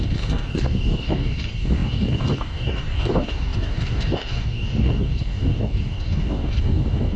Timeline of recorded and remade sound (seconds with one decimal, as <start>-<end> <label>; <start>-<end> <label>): 0.0-7.2 remade